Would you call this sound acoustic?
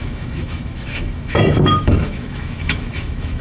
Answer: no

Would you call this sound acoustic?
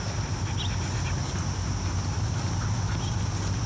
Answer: yes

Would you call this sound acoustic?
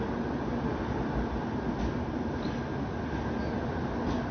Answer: yes